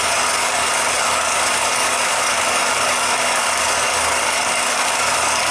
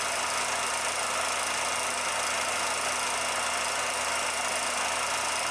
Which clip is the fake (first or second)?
first